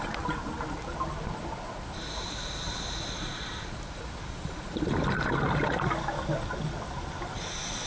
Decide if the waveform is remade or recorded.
recorded